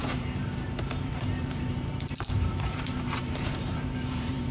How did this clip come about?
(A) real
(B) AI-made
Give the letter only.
B